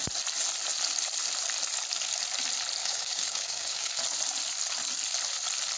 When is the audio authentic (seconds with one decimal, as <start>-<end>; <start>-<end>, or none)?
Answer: 0.0-2.8; 3.9-5.8